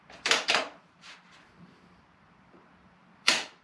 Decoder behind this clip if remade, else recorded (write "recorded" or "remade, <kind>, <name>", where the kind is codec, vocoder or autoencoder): remade, vocoder, BigVGAN v2